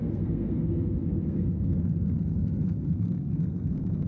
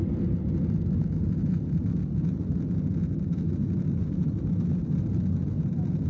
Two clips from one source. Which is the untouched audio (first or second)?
second